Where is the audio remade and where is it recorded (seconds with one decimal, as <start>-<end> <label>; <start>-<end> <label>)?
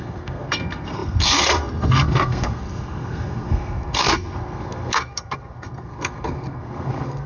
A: 0.0-7.3 remade